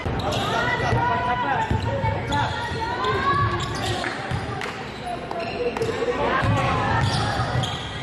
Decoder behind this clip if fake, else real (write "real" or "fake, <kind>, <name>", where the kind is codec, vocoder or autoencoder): fake, vocoder, BigVGAN v2